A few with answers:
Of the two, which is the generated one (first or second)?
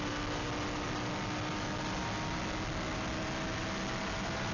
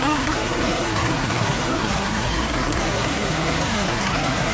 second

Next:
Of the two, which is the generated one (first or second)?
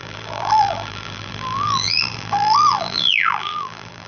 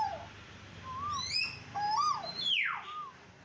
first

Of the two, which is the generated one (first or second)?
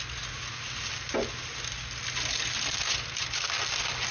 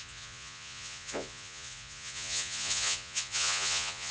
second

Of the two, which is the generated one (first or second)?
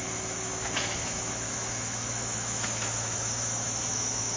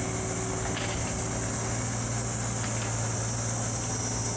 first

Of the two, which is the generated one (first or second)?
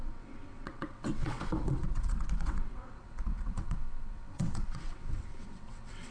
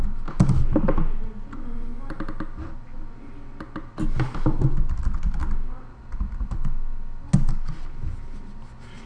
first